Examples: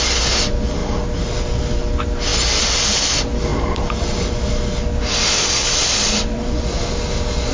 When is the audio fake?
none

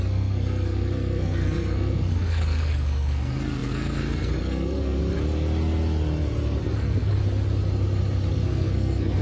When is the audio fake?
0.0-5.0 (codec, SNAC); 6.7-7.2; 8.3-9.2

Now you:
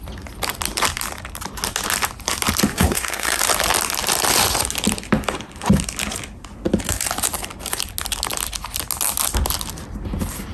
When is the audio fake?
2.7-3.4 (codec, SNAC)

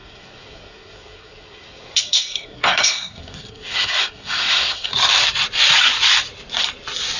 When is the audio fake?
0.0-4.9 (codec, SNAC)

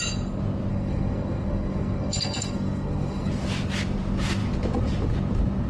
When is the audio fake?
0.7-3.3 (codec, SNAC)